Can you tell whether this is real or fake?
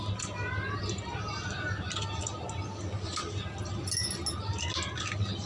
real